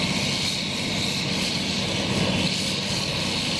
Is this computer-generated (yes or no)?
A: no